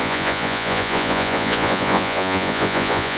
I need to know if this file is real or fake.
fake